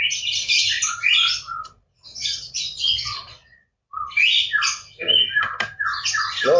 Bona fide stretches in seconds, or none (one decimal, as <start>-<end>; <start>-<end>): 0.0-2.1; 3.7-6.6